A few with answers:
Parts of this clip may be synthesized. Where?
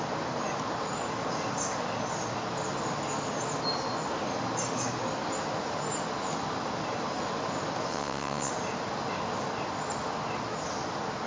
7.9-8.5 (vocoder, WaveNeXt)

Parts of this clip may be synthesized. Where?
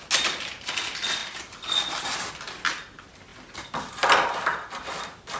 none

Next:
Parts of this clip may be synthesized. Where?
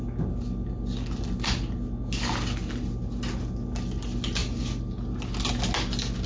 none